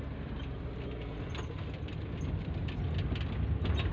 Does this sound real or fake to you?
real